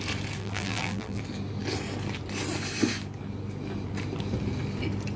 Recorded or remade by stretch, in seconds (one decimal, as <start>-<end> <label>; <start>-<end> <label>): 0.0-0.4 recorded; 0.4-1.2 remade; 1.2-5.2 recorded